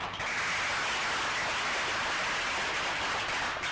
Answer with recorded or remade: recorded